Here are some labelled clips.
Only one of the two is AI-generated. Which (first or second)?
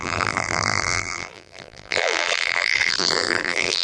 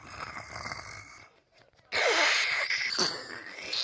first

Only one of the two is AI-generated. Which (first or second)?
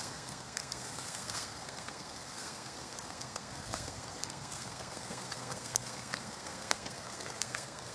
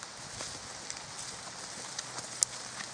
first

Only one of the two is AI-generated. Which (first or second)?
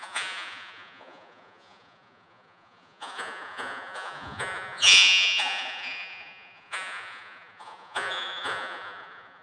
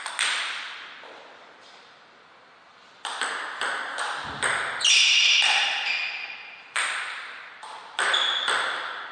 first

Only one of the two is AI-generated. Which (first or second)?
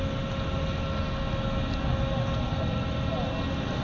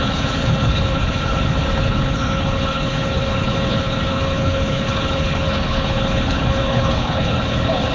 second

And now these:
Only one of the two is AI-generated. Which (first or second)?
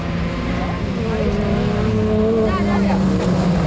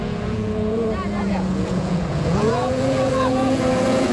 second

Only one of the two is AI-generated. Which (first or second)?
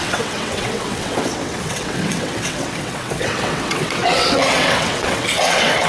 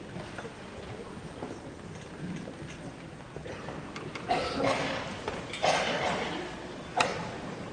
first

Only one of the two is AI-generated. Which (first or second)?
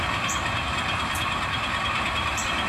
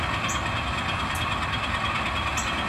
first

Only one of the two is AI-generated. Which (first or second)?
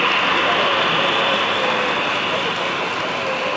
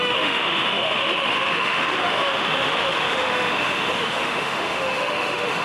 second